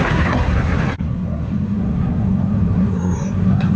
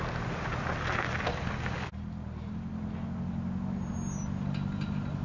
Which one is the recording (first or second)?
second